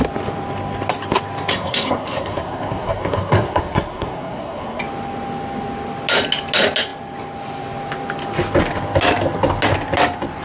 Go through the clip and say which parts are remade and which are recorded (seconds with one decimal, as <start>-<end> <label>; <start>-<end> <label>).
0.0-1.5 recorded; 1.5-4.8 remade; 4.8-10.4 recorded